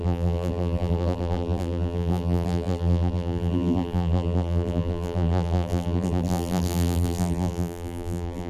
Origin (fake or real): fake